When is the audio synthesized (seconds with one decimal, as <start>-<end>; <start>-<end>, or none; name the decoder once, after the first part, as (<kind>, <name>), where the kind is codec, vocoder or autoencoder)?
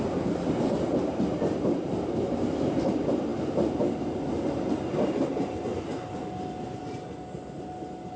none